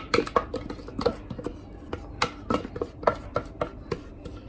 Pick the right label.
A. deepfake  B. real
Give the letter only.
B